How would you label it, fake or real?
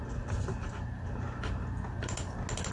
real